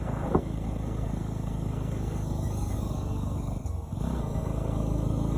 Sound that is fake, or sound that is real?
fake